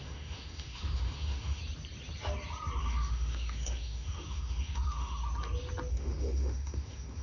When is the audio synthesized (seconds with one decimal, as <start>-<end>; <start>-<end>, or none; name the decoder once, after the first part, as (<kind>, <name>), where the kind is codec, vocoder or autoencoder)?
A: 0.0-1.6 (autoencoder, DAC-VAE); 2.8-5.2; 5.9-7.2